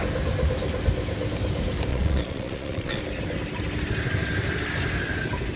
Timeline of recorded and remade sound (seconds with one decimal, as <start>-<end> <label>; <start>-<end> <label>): 0.0-1.9 recorded; 1.9-3.0 remade; 3.0-5.6 recorded

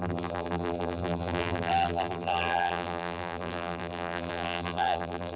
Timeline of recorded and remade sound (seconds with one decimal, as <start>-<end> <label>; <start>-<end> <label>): 0.0-5.4 remade

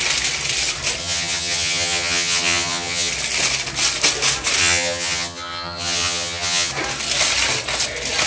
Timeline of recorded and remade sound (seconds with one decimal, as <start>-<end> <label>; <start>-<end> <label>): 0.0-1.0 recorded; 1.0-3.1 remade; 3.1-4.6 recorded; 4.6-6.7 remade; 6.7-8.3 recorded

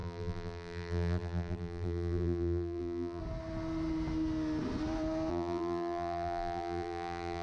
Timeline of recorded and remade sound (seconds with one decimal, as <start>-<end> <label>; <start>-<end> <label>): 0.0-3.2 remade; 3.2-5.3 recorded; 5.3-7.4 remade